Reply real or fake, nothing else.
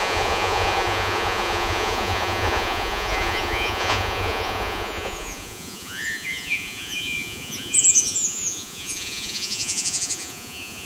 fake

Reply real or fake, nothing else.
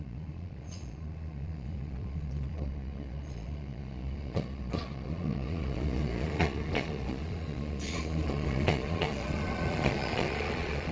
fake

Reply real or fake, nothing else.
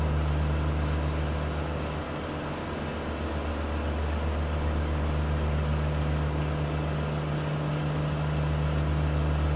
real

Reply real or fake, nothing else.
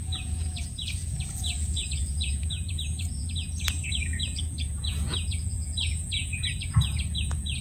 fake